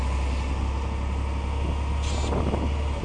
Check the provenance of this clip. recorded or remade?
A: recorded